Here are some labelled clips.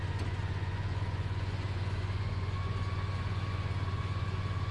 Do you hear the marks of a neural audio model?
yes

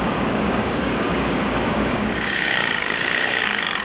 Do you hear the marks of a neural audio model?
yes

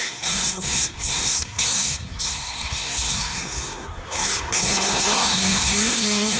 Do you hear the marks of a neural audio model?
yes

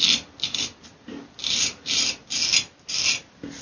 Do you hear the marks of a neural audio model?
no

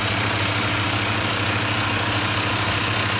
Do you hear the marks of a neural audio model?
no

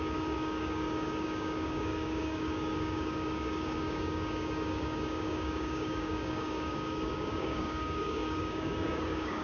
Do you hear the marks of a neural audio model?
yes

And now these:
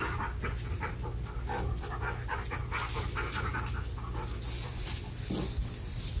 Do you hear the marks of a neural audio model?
no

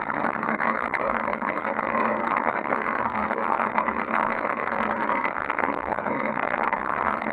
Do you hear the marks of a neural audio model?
yes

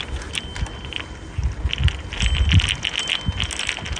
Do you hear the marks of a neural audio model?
no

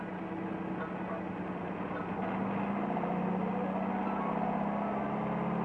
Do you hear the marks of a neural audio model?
no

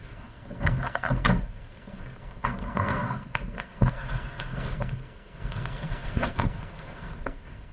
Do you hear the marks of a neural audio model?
yes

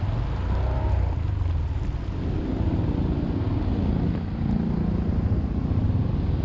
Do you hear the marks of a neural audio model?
no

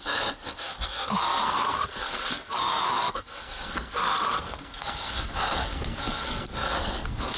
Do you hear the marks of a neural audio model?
yes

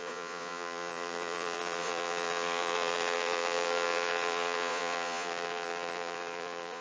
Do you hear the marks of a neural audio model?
yes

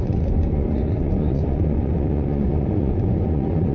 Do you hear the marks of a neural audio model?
yes